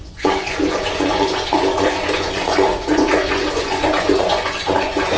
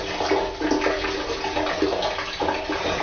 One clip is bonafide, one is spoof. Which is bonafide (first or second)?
second